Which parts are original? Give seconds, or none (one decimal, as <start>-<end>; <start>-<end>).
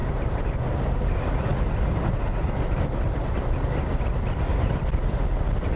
0.0-5.8